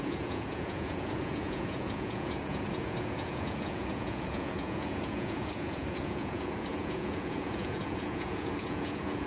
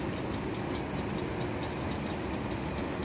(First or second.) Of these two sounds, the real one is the second